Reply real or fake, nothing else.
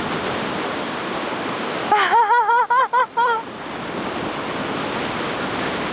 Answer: real